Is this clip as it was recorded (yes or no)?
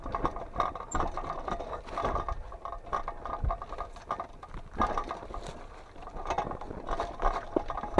yes